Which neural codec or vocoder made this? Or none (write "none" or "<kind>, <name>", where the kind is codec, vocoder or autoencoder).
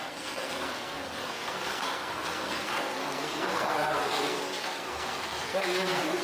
codec, SNAC